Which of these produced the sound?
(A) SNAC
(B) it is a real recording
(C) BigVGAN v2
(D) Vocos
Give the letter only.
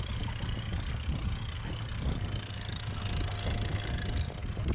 B